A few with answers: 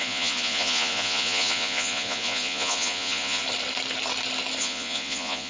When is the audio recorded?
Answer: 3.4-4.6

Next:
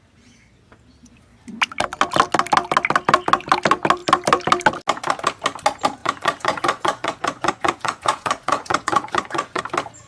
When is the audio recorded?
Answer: 0.0-6.0; 9.6-10.1

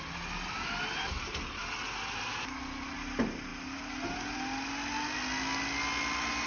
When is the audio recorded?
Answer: 0.0-6.5

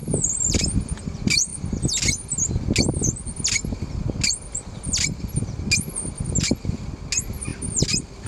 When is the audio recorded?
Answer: 0.0-8.3

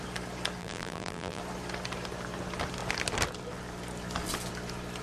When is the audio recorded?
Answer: 0.0-0.6; 1.4-5.0

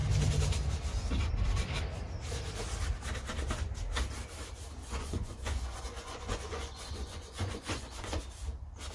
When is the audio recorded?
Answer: 0.0-4.8; 8.2-8.9

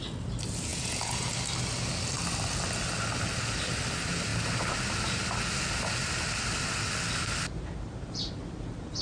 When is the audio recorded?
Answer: 0.0-0.7; 1.3-9.0